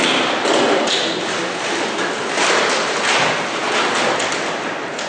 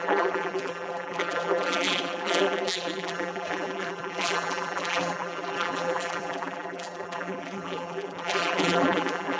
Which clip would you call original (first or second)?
first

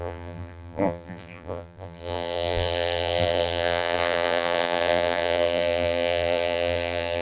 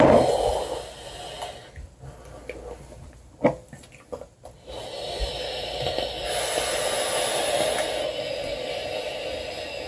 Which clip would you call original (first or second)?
second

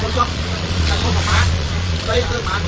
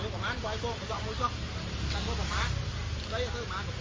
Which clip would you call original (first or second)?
second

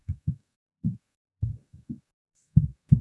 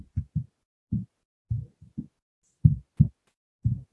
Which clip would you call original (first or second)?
second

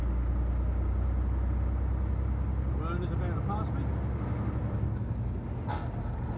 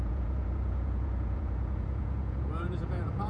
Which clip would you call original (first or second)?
first